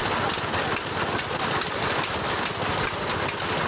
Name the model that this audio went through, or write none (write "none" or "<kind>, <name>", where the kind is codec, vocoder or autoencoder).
none